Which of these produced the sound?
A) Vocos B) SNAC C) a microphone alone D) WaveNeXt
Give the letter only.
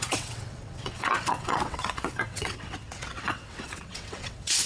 D